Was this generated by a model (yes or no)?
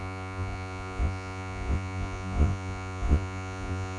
yes